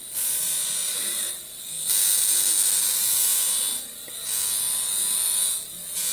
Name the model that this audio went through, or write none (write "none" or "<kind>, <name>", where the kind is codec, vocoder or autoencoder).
vocoder, BigVGAN v2